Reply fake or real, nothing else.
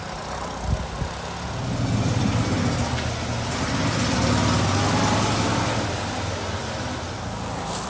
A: real